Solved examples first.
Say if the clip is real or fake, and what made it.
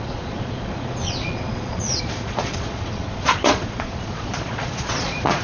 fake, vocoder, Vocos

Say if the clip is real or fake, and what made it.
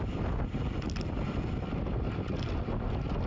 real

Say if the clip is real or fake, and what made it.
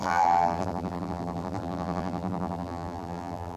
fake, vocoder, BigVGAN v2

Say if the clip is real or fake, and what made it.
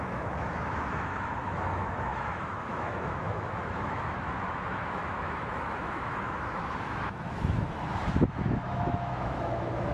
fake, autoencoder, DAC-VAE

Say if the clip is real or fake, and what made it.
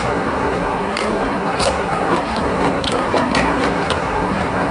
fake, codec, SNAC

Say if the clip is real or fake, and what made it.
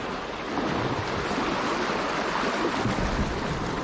real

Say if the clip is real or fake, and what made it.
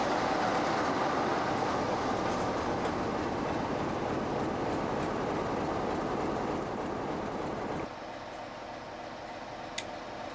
real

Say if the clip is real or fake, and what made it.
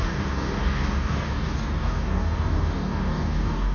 fake, codec, DAC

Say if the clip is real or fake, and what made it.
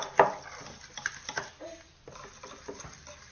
real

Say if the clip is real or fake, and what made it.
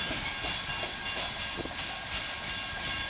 real